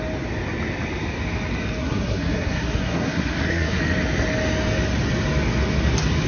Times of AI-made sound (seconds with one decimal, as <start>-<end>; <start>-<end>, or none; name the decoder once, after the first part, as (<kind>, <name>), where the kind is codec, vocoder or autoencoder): 1.8-3.8 (codec, SNAC)